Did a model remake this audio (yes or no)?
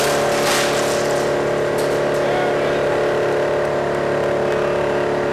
no